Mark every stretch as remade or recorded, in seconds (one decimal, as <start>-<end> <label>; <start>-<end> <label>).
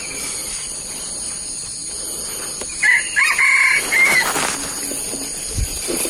0.0-0.4 recorded; 0.4-1.1 remade; 1.1-6.1 recorded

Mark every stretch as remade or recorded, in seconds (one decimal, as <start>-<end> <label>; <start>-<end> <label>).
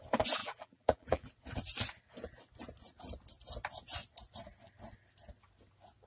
0.0-0.4 recorded; 0.4-1.3 remade; 1.3-6.1 recorded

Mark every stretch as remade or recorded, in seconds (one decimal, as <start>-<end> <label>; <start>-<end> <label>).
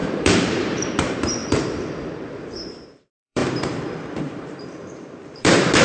0.0-1.4 remade; 1.4-2.1 recorded; 2.1-5.8 remade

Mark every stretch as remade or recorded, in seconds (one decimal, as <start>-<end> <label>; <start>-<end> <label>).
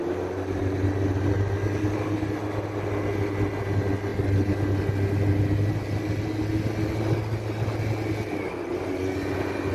0.0-9.7 recorded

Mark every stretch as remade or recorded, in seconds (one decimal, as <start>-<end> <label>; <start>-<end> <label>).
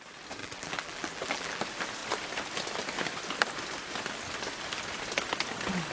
0.0-0.4 recorded; 0.4-1.6 remade; 1.6-5.9 recorded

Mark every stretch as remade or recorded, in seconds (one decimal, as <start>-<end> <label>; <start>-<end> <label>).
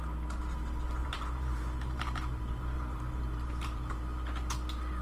0.0-1.0 recorded; 1.0-4.0 remade; 4.0-5.0 recorded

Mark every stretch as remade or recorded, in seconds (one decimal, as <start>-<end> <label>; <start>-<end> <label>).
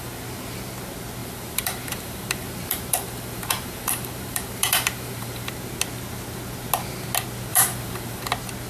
0.0-1.2 recorded; 1.2-5.5 remade; 5.5-7.5 recorded; 7.5-8.2 remade; 8.2-8.7 recorded